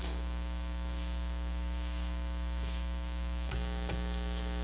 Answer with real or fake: fake